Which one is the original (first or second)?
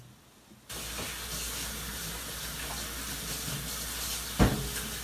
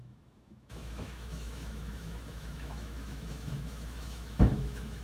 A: first